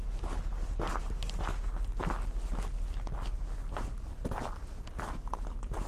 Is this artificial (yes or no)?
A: no